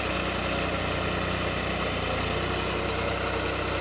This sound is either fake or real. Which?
real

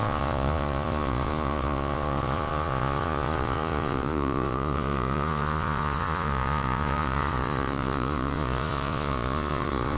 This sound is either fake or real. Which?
fake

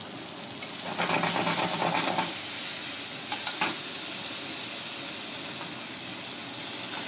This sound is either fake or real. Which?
real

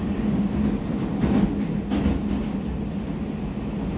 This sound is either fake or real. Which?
real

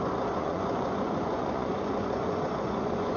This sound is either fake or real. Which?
fake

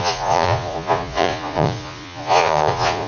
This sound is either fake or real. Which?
fake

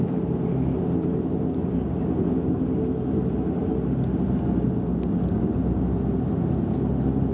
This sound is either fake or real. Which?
real